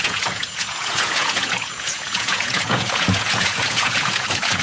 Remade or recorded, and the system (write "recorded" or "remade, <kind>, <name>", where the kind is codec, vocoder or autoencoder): remade, vocoder, Vocos